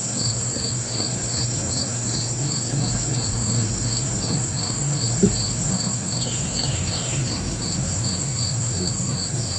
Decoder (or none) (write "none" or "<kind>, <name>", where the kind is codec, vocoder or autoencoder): codec, SNAC